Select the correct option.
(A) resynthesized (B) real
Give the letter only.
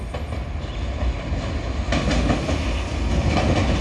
B